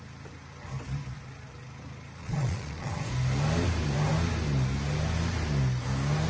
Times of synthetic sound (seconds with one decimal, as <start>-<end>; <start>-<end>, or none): 2.2-2.9

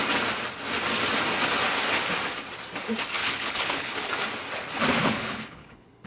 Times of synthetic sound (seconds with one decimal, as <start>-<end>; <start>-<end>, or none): 3.2-4.1; 5.0-6.1

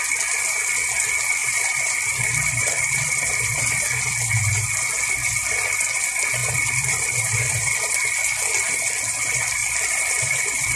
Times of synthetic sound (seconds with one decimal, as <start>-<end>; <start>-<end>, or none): 1.4-3.6; 6.4-8.1; 9.6-10.8

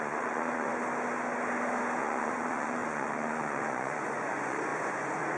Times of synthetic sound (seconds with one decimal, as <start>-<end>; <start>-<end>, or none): 0.0-0.7; 2.0-5.4

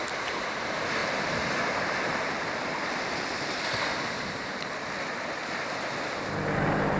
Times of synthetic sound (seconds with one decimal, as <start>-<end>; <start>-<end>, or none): 1.0-5.1